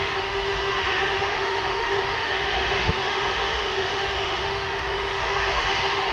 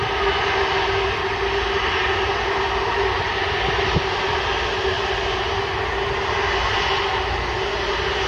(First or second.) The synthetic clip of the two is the first